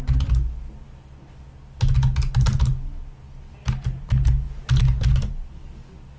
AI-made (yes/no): no